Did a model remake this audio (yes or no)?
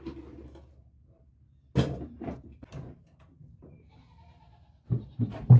no